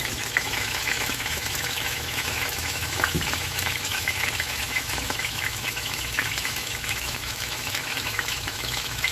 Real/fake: fake